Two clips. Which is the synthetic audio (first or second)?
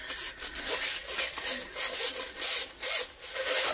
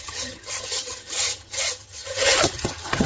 second